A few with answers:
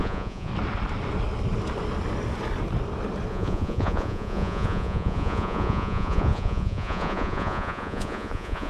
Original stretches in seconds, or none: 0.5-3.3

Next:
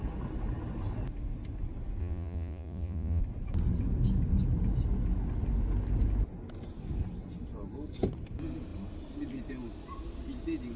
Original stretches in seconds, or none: 0.0-2.0; 3.2-10.8